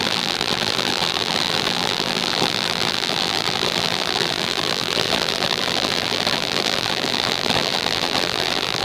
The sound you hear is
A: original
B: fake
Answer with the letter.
B